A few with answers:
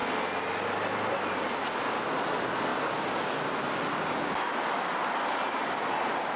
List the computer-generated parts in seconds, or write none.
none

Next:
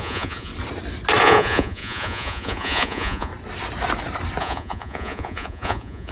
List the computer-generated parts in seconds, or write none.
0.0-0.5; 1.2-3.3; 4.4-6.1